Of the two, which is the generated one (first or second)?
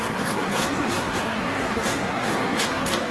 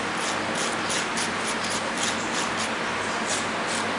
first